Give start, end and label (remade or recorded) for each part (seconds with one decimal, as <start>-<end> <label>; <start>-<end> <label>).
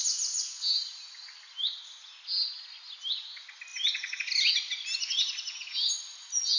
0.0-6.6 recorded